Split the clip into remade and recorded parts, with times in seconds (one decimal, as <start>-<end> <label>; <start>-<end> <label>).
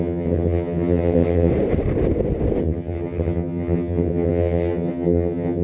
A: 0.0-1.5 remade; 1.5-2.6 recorded; 2.6-5.6 remade